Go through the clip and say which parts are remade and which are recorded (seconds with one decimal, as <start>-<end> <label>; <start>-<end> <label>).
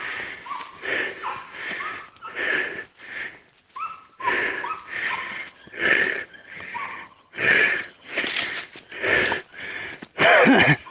0.0-5.1 recorded; 5.1-8.1 remade; 8.1-10.9 recorded